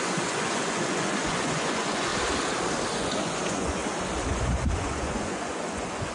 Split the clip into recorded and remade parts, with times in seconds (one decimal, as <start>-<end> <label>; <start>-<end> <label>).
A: 0.0-2.1 remade; 2.1-2.9 recorded; 2.9-3.8 remade; 3.8-4.3 recorded; 4.3-6.1 remade